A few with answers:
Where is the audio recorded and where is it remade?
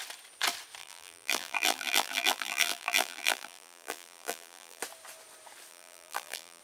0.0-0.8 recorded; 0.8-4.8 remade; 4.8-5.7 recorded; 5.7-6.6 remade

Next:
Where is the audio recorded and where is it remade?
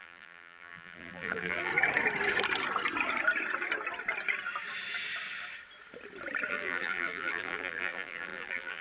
0.0-1.7 remade; 1.7-6.5 recorded; 6.5-8.8 remade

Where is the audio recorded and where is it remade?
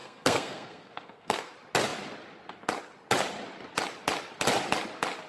0.0-1.5 remade; 1.5-5.3 recorded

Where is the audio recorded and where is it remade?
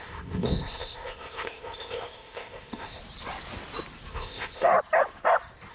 0.0-3.0 remade; 3.0-4.1 recorded; 4.1-4.7 remade; 4.7-5.7 recorded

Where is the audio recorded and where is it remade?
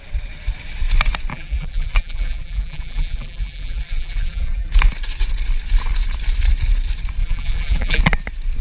0.0-1.3 recorded; 1.3-4.7 remade; 4.7-7.2 recorded; 7.2-8.0 remade; 8.0-8.6 recorded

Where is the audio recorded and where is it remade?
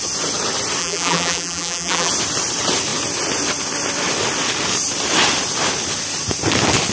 0.0-0.8 recorded; 0.8-2.1 remade; 2.1-6.9 recorded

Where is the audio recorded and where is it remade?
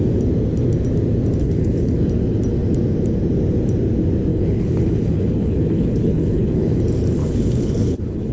0.0-1.4 recorded; 1.4-2.0 remade; 2.0-4.3 recorded; 4.3-6.8 remade; 6.8-7.2 recorded; 7.2-8.3 remade